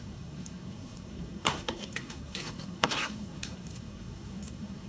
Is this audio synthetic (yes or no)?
yes